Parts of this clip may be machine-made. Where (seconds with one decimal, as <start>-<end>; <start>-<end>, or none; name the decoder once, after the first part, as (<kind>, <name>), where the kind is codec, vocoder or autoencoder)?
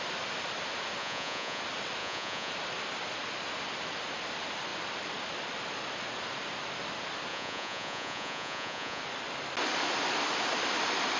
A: 1.0-1.6 (vocoder, Vocos); 2.0-2.5; 7.3-9.0